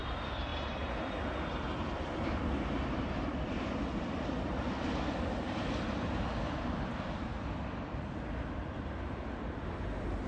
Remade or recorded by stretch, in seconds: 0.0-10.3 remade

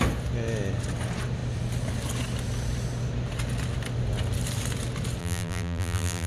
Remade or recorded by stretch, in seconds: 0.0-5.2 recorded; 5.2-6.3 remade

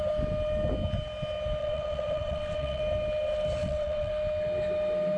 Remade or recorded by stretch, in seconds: 0.0-1.6 recorded; 1.6-2.8 remade; 2.8-3.6 recorded; 3.6-4.1 remade; 4.1-5.2 recorded

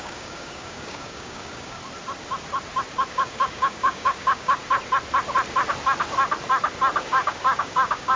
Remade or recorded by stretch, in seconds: 0.0-1.8 remade; 1.8-3.1 recorded; 3.1-4.6 remade; 4.6-7.0 recorded; 7.0-8.2 remade